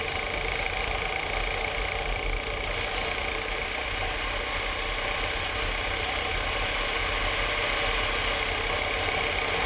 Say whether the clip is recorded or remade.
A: recorded